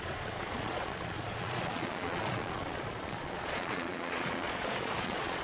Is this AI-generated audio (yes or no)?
yes